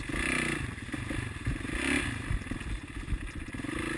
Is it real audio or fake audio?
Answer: real